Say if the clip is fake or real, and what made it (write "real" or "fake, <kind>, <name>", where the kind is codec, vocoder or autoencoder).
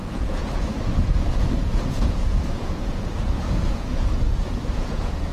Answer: fake, vocoder, Vocos